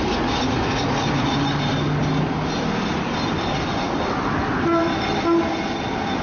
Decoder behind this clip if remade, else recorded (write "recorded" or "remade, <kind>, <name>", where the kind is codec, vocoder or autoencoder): recorded